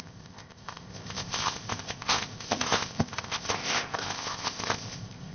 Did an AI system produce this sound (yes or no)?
yes